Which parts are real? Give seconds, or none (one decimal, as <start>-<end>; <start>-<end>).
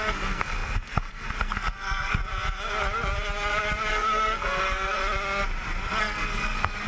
2.2-3.9; 5.0-6.0